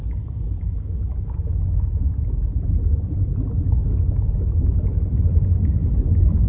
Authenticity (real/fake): real